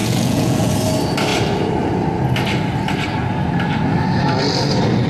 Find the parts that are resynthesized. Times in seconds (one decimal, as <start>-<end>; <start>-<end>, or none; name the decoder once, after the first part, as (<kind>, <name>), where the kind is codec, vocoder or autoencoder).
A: 0.0-0.7 (vocoder, Vocos)